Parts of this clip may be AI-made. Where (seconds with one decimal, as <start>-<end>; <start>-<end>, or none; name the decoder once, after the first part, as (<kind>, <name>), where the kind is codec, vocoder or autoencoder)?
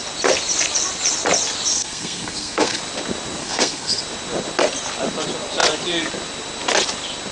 1.7-2.8 (codec, SNAC); 3.4-4.0